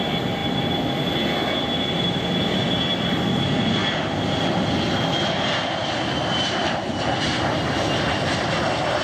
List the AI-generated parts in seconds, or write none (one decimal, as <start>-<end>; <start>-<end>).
3.8-4.3; 5.8-6.9